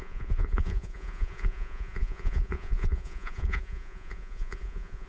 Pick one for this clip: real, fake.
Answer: fake